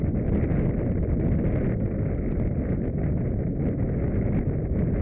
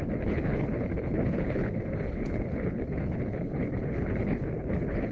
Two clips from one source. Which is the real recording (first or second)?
first